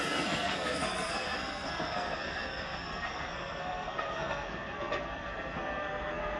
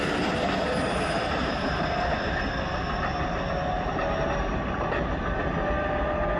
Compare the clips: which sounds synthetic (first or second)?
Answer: first